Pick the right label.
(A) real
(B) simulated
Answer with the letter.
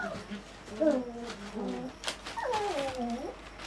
A